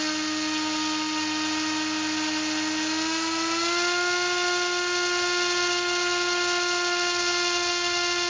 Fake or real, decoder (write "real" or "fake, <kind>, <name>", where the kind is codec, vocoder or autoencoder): real